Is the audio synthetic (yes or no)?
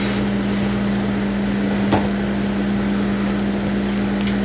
no